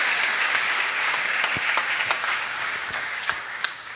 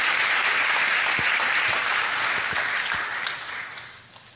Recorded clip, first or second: second